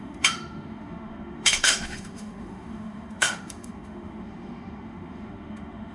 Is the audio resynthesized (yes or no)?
yes